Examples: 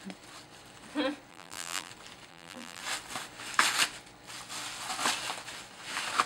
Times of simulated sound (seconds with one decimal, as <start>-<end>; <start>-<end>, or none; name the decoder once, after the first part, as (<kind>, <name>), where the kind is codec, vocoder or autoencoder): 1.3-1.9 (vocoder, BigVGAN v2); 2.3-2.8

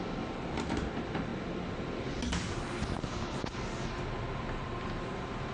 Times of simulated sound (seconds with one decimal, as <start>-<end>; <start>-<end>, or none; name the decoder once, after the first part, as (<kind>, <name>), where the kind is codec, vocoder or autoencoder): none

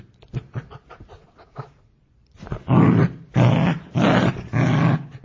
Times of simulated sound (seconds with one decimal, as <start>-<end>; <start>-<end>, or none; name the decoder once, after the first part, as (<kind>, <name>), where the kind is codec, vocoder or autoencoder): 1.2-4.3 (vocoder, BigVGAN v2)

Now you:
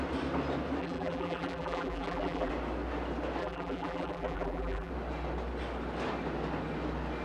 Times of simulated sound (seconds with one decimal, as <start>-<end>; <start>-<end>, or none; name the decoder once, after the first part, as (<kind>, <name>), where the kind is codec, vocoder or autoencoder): 0.8-2.5 (vocoder, BigVGAN v2); 3.4-4.9

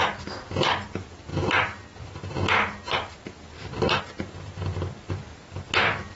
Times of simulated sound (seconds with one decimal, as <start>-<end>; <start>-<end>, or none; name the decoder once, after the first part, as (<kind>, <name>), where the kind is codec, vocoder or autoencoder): 1.3-2.3 (vocoder, BigVGAN v2); 3.5-4.0

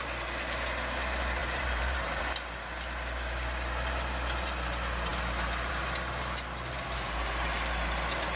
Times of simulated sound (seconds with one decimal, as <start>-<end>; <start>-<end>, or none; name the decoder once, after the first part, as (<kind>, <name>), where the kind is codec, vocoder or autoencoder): 1.4-2.2 (vocoder, BigVGAN v2)

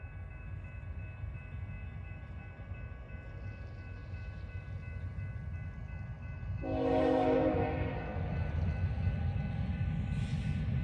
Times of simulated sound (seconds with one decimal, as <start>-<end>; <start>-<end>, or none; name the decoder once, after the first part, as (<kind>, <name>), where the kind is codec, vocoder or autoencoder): 4.0-4.6 (vocoder, BigVGAN v2)

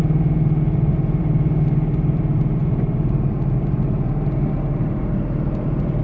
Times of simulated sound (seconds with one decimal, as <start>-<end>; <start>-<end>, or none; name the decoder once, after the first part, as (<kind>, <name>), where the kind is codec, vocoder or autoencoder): 0.0-6.0 (vocoder, BigVGAN v2)